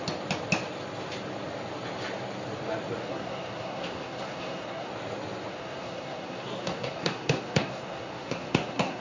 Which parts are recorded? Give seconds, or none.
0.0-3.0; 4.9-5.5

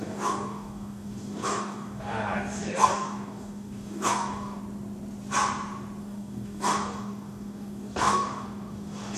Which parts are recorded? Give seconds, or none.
4.6-6.0

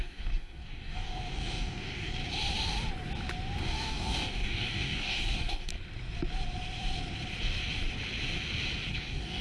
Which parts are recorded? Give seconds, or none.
2.2-3.6; 5.7-8.9

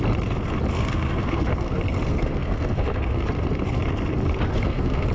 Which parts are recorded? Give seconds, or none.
0.0-0.7; 3.8-4.5